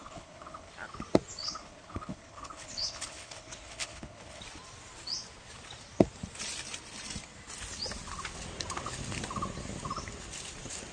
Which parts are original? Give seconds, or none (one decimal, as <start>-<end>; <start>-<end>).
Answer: 0.7-1.4; 4.4-10.9

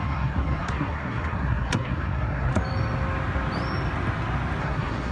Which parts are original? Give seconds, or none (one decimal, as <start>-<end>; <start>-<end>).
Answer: 2.5-4.6

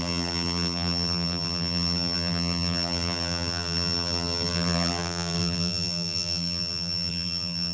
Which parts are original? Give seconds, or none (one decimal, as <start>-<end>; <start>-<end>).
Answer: none